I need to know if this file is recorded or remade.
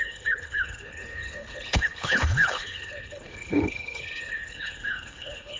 remade